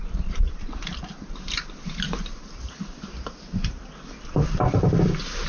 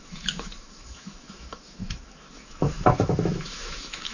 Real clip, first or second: first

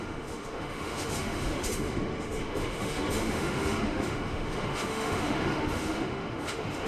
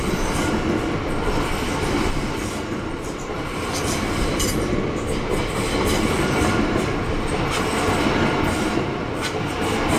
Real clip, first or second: second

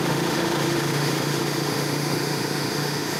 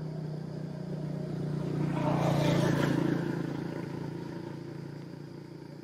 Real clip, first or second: second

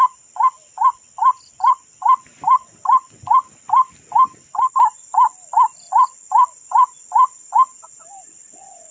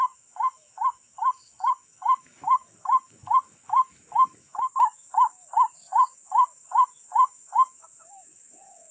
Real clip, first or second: first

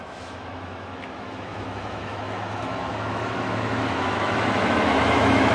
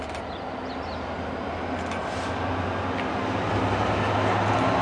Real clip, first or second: second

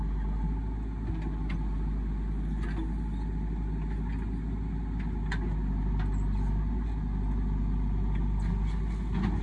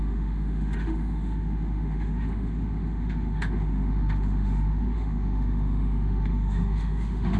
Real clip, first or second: first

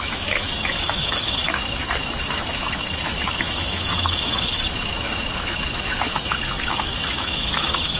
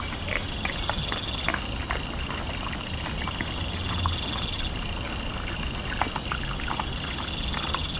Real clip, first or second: second